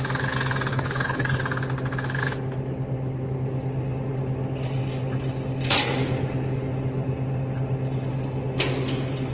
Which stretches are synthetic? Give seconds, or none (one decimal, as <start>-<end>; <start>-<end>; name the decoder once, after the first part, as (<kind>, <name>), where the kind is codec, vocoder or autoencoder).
0.7-1.4 (codec, HILCodec)